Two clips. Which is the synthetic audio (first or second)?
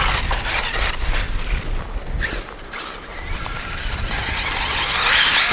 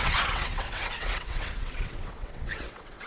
second